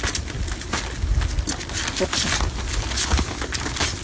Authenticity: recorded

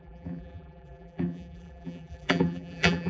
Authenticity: remade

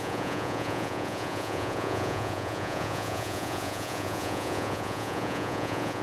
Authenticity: remade